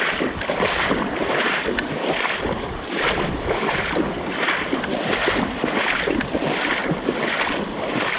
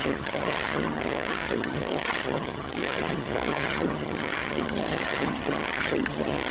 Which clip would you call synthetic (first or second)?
second